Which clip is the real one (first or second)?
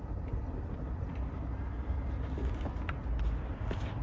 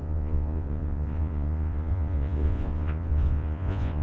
first